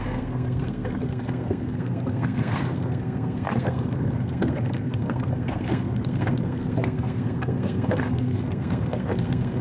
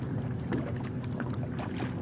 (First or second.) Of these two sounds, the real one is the second